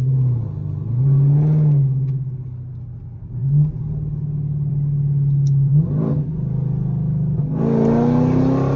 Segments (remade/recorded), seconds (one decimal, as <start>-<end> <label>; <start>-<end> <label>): 0.0-8.8 recorded